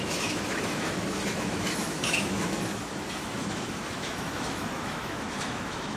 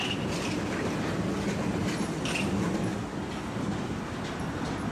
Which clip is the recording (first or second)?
second